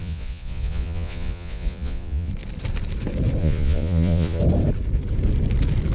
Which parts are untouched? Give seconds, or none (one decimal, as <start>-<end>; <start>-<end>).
2.3-3.4; 4.4-5.9